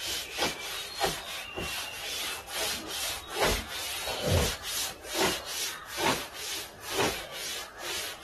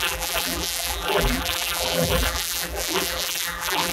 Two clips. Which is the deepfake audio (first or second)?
second